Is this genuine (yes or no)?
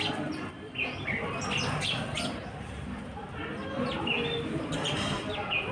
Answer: no